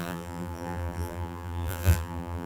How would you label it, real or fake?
fake